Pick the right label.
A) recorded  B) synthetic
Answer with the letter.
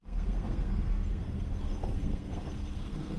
B